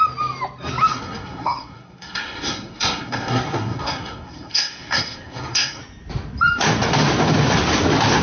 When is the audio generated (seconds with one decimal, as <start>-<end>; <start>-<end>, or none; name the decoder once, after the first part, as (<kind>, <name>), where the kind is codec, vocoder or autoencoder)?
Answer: 0.9-5.8 (codec, SNAC)